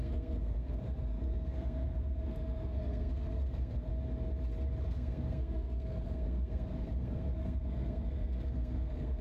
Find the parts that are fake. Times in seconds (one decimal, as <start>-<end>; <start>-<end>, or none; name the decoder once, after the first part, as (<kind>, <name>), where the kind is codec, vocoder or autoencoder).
0.0-3.9 (codec, SNAC); 4.8-9.2